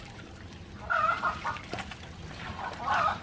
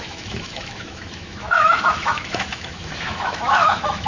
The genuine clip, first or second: first